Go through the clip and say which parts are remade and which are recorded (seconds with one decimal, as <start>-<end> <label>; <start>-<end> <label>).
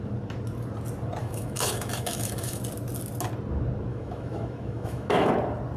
0.0-1.2 recorded; 1.2-2.6 remade; 2.6-3.9 recorded; 3.9-5.3 remade; 5.3-5.8 recorded